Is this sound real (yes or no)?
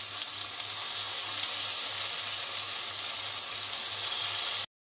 yes